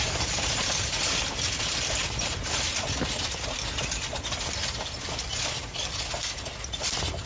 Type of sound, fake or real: real